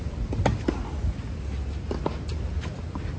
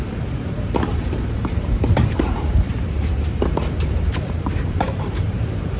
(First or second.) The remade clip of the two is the second